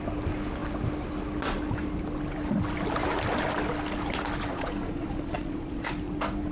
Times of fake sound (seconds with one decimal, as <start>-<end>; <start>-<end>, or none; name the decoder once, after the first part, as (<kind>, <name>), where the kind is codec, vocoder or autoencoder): 4.4-5.9 (vocoder, Vocos)

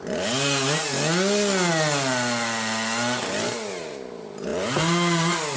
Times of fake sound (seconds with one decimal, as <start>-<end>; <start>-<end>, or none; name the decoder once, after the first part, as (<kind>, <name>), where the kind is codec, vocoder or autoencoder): none